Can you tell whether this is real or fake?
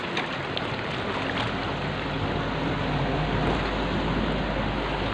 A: real